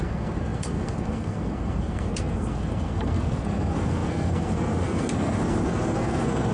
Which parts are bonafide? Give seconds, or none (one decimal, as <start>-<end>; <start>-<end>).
none